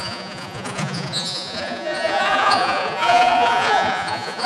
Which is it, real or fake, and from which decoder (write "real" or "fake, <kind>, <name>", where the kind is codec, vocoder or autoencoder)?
fake, vocoder, Vocos